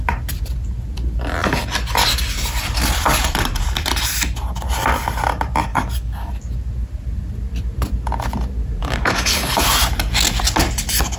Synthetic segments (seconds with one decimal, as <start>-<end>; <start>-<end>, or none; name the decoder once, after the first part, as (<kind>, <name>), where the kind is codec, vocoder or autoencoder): 5.7-6.3 (codec, DAC); 8.8-9.6